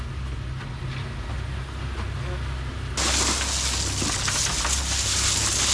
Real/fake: real